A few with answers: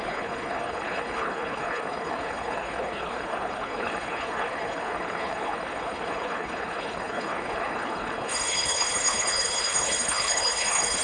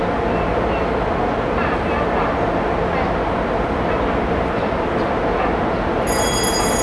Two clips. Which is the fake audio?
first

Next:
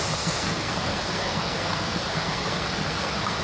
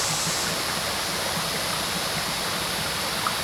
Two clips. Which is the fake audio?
first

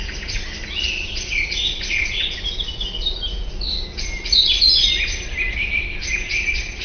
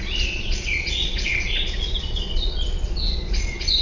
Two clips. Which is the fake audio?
second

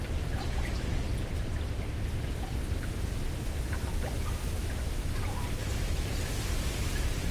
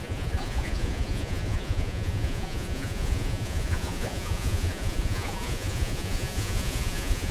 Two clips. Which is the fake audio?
second